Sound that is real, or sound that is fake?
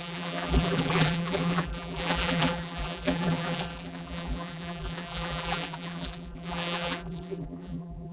fake